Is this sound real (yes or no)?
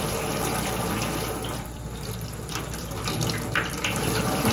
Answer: no